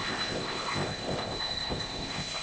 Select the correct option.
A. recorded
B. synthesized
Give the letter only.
B